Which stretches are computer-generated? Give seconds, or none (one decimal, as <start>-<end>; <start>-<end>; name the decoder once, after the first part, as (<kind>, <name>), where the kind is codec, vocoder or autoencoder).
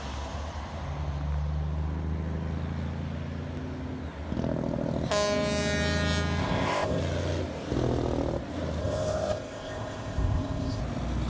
6.4-7.0 (codec, ZipCodec); 8.8-10.8